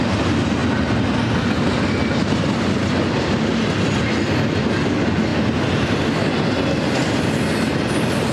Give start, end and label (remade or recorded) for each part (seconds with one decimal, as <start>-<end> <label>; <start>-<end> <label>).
0.0-8.3 recorded

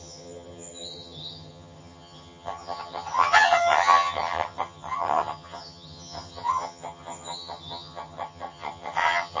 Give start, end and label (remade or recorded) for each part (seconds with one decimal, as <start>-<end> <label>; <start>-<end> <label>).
0.0-9.4 remade

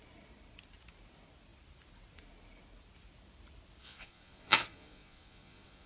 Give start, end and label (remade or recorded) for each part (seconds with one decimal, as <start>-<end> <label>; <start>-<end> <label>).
0.0-3.8 recorded; 3.8-5.9 remade